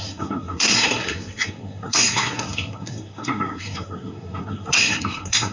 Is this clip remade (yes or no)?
yes